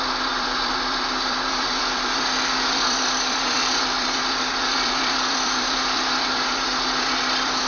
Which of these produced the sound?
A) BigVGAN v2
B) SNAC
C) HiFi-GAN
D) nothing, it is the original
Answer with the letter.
A